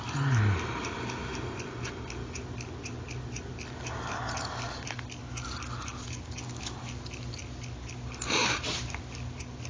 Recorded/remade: recorded